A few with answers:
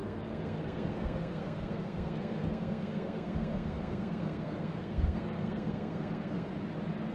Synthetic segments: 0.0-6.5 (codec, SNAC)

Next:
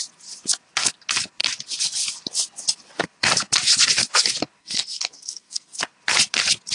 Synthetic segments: 4.6-5.8 (codec, SNAC)

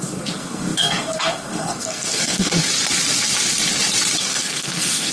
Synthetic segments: 0.0-2.6 (codec, SNAC); 4.2-5.1

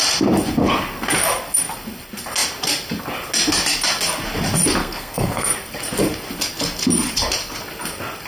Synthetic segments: 4.8-5.5 (codec, SNAC)

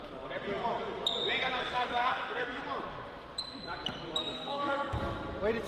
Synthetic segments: 1.6-2.6 (codec, SNAC); 4.2-5.0

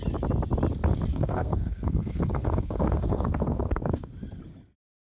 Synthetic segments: 1.1-4.1 (codec, SNAC)

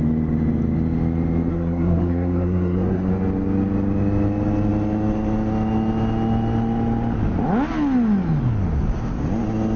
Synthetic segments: 1.5-3.1 (codec, SNAC)